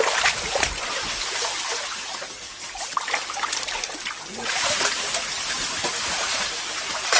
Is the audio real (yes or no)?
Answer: yes